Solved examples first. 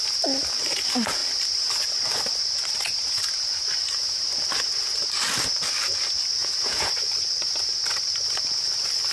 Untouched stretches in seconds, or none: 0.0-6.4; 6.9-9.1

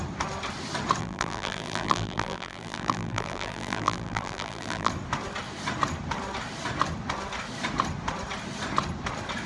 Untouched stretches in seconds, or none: 0.0-1.0; 4.9-9.5

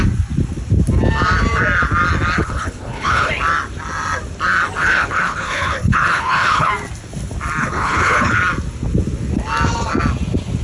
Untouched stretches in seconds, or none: 0.0-2.4; 3.3-4.8; 6.7-7.6; 8.4-10.6

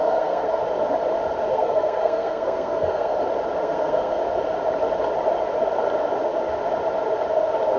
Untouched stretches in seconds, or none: 0.6-1.5; 3.1-3.6; 4.2-7.8

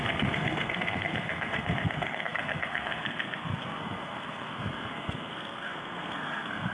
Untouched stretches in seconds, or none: none

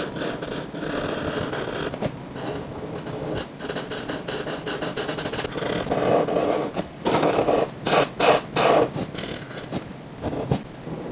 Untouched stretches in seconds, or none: 0.0-6.4; 7.5-11.1

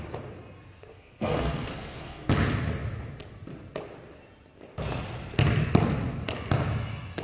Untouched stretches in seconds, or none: 0.0-0.8; 2.3-7.2

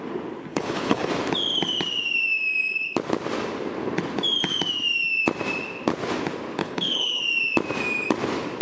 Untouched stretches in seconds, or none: 0.0-0.5; 1.1-6.6; 7.2-8.6